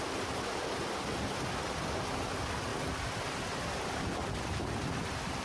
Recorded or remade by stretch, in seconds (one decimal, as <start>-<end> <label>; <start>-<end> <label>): 0.0-5.4 recorded